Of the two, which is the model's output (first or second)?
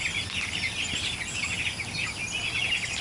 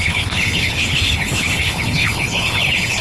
second